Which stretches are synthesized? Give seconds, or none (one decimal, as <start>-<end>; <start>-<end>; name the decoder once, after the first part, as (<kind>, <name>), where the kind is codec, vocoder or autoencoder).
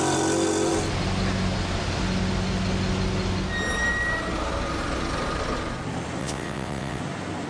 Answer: 6.2-7.0 (vocoder, WaveNeXt)